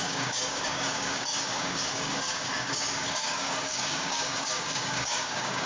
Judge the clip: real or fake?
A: fake